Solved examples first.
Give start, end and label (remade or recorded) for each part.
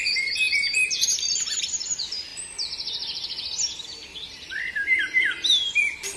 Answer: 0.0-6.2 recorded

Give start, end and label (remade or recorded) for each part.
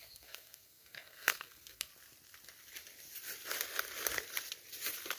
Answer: 0.0-1.9 remade; 1.9-5.2 recorded